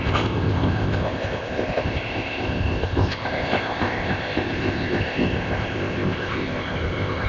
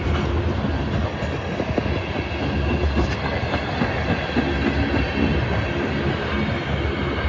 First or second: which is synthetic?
first